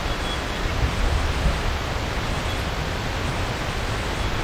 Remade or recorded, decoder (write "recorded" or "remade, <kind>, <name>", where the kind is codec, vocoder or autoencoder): recorded